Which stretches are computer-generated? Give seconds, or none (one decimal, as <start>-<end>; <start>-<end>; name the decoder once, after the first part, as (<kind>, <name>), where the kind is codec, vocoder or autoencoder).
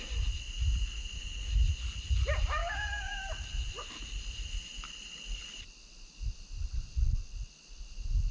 2.6-3.3 (codec, DAC)